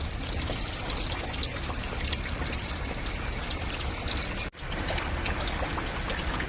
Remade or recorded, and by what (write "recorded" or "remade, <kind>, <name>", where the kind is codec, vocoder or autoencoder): recorded